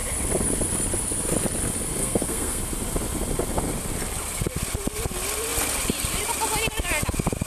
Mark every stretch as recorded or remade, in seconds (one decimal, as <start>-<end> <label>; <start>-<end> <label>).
0.0-2.0 recorded; 2.0-2.6 remade; 2.6-7.5 recorded